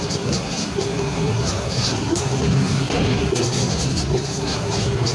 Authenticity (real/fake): fake